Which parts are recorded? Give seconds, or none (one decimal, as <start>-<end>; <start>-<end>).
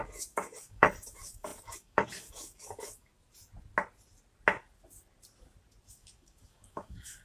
3.1-5.9